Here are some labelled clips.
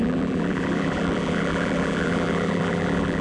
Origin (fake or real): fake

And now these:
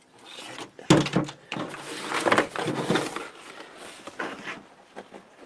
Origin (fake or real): real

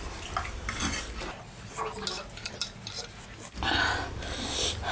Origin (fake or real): real